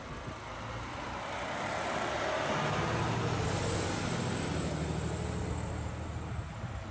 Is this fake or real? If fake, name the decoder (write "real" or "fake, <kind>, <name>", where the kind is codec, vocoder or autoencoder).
real